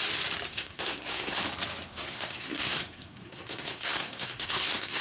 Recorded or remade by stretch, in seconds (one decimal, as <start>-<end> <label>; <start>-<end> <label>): 0.0-0.5 recorded; 0.5-1.4 remade; 1.4-1.9 recorded; 1.9-5.0 remade